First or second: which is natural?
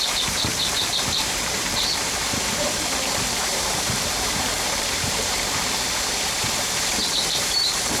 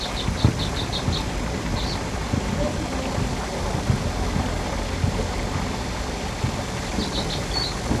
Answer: second